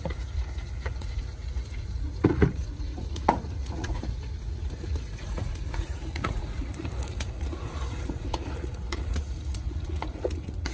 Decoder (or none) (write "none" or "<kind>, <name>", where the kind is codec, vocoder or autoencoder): vocoder, Vocos